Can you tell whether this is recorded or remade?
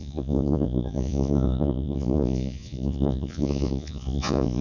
remade